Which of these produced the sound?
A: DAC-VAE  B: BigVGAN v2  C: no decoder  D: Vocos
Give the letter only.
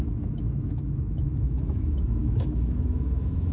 A